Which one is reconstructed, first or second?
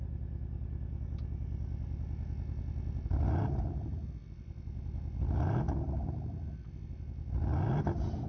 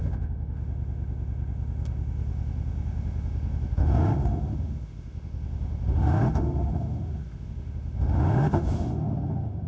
second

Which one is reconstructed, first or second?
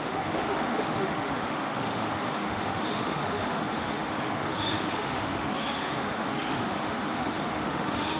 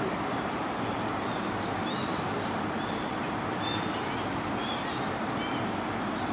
first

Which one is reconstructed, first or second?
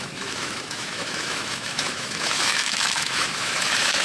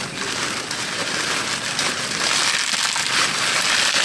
first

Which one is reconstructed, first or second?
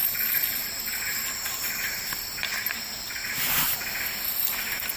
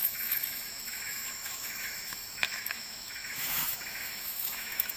second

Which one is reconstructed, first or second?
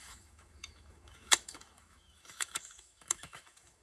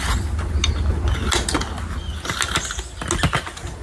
first